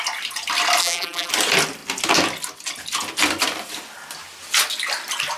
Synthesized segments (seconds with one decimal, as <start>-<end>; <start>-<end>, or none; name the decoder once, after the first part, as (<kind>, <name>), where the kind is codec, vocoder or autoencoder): 0.8-1.3 (vocoder, BigVGAN v2)